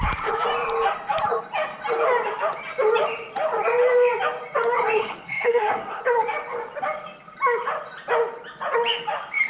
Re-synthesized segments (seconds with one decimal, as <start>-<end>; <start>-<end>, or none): 5.0-6.0